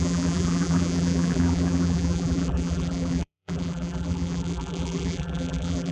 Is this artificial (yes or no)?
yes